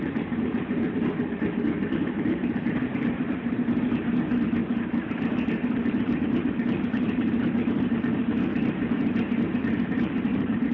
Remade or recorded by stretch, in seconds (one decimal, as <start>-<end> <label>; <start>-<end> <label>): 0.0-8.8 remade; 8.8-9.4 recorded; 9.4-10.7 remade